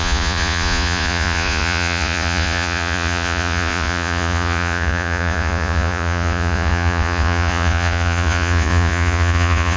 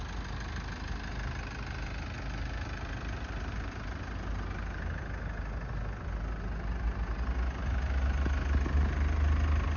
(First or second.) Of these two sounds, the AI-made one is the first